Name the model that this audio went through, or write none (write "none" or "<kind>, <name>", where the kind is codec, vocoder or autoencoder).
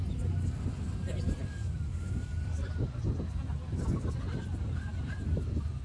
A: none